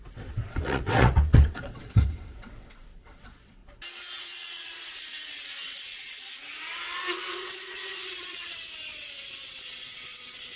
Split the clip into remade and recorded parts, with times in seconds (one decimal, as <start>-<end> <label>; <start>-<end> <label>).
0.0-3.6 remade; 3.6-4.2 recorded; 4.2-10.6 remade